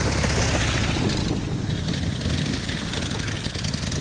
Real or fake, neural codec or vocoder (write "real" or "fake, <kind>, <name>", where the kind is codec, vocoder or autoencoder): real